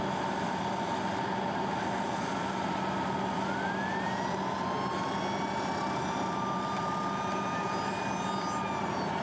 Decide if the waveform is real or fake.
real